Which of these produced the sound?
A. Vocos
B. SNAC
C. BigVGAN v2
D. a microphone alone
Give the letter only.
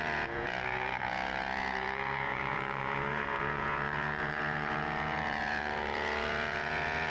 A